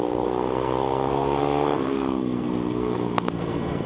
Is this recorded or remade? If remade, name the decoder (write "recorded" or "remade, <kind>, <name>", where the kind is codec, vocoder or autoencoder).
remade, codec, SNAC